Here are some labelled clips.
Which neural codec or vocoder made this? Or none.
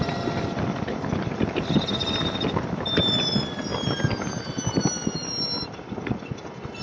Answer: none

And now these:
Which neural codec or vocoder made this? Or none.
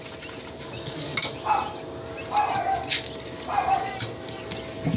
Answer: none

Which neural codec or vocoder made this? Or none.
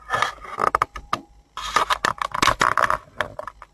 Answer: none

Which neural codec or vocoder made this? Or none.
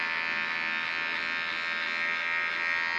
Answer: none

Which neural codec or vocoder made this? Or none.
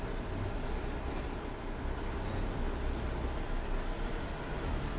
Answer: none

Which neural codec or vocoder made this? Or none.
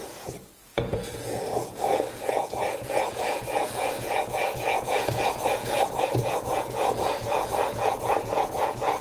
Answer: vocoder, Vocos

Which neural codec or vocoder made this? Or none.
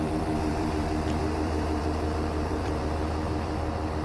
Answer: vocoder, BigVGAN v2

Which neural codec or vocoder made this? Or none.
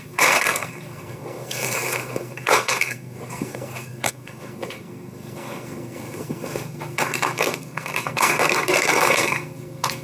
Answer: codec, SNAC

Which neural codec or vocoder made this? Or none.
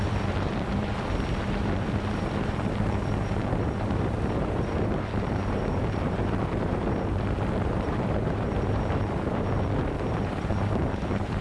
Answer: vocoder, BigVGAN v2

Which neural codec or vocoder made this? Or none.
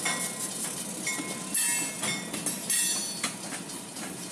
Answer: none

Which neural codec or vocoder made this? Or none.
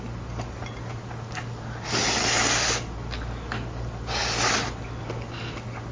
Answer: none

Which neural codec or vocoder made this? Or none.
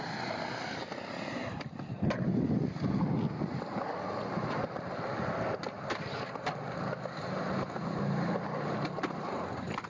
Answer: none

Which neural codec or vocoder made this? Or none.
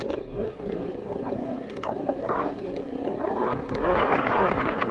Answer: codec, SNAC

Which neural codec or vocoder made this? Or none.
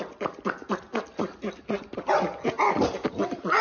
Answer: none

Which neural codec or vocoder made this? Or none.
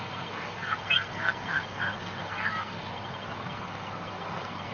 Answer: codec, SNAC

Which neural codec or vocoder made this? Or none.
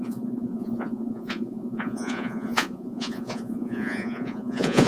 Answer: vocoder, Vocos